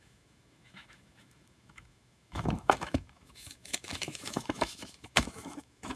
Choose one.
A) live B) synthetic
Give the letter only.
B